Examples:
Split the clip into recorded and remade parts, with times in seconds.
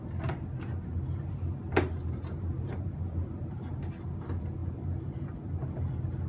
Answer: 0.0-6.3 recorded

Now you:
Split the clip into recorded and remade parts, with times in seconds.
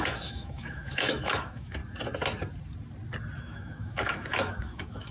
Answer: 0.0-1.8 remade; 1.8-3.4 recorded; 3.4-5.1 remade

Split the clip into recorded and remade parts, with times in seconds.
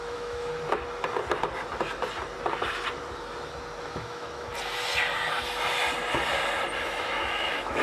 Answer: 0.0-0.5 remade; 0.5-3.8 recorded; 3.8-4.5 remade; 4.5-6.8 recorded; 6.8-7.8 remade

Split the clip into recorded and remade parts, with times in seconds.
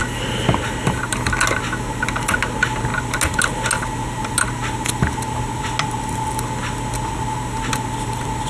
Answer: 0.0-8.5 recorded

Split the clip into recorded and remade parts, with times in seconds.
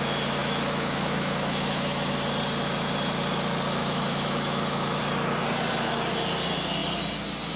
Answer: 0.0-0.4 recorded; 0.4-2.1 remade; 2.1-3.8 recorded; 3.8-5.0 remade; 5.0-7.6 recorded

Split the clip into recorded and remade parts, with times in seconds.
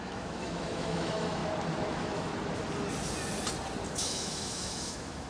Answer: 0.0-1.4 remade; 1.4-1.9 recorded; 1.9-2.3 remade; 2.3-3.9 recorded; 3.9-5.3 remade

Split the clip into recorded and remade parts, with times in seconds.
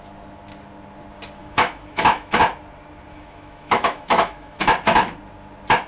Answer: 0.0-1.4 recorded; 1.4-2.4 remade; 2.4-3.1 recorded; 3.1-4.6 remade; 4.6-5.9 recorded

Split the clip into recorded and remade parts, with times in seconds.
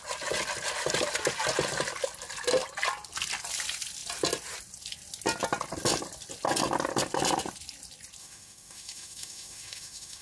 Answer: 0.0-8.2 recorded; 8.2-10.2 remade